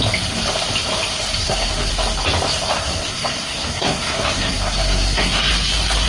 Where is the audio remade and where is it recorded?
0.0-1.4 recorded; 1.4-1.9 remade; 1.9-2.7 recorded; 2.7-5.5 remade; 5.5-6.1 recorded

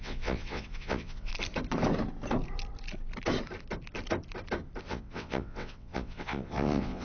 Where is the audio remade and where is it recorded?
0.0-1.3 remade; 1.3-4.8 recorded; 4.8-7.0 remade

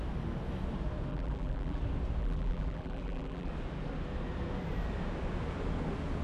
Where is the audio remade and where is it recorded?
0.0-1.1 recorded; 1.1-1.8 remade; 1.8-2.2 recorded; 2.2-3.5 remade; 3.5-6.2 recorded